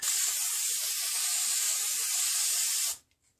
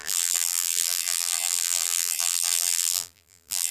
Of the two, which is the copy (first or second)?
second